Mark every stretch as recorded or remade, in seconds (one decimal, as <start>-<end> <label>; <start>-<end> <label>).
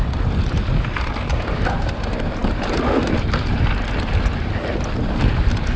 0.0-5.8 recorded